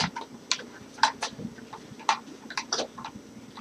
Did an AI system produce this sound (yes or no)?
no